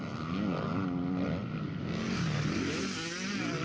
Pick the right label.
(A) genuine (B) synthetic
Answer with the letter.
A